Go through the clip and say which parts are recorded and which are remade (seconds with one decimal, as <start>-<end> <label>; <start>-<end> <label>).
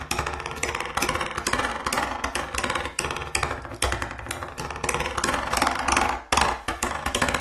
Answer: 0.0-6.7 recorded; 6.7-7.4 remade